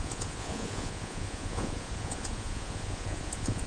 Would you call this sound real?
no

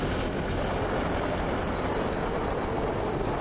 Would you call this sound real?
yes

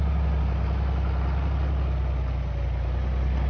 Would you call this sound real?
yes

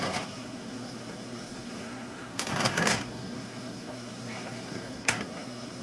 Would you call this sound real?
no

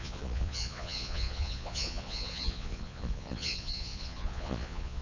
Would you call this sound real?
no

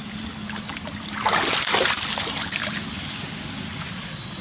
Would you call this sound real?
yes